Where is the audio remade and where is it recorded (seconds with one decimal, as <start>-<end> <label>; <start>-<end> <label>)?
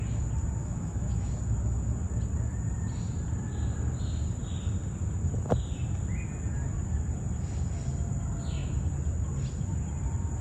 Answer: 0.0-0.6 recorded; 0.6-1.3 remade; 1.3-10.4 recorded